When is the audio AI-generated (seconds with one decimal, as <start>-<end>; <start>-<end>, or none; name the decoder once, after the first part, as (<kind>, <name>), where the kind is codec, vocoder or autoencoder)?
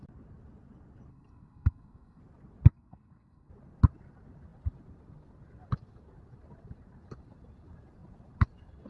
1.1-2.2 (codec, SNAC); 2.7-3.5